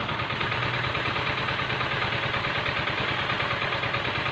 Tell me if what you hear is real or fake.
real